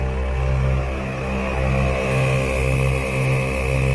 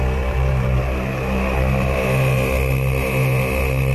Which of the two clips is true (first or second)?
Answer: first